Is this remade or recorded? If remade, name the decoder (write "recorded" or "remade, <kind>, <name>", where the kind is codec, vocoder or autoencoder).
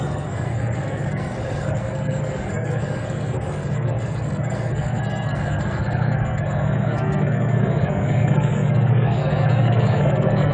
remade, codec, SNAC